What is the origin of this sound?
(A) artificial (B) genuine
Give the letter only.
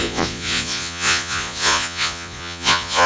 A